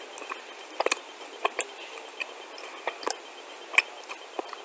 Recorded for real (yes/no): yes